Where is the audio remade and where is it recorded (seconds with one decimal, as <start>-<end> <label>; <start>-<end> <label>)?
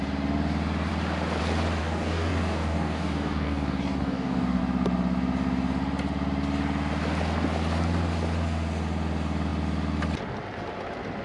0.0-1.8 recorded; 1.8-4.6 remade; 4.6-11.2 recorded